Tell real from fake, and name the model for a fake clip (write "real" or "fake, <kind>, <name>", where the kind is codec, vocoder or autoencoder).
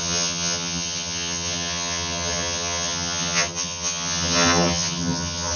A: fake, vocoder, HiFi-GAN